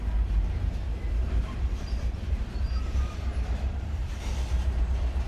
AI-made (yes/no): yes